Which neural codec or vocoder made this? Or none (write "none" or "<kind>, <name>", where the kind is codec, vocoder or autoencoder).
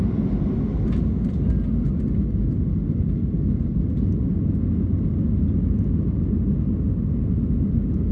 none